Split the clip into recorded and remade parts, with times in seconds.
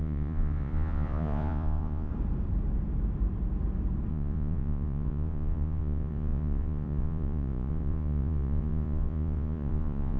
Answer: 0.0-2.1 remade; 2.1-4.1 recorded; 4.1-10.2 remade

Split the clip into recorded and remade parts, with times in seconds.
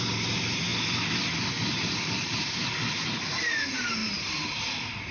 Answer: 0.0-4.0 recorded; 4.0-4.6 remade; 4.6-5.1 recorded